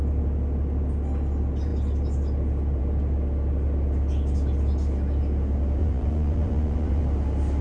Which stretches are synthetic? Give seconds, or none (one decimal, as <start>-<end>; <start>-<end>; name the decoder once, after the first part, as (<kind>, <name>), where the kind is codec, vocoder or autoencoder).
5.8-7.0 (vocoder, Vocos)